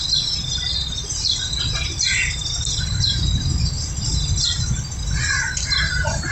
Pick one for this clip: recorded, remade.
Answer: recorded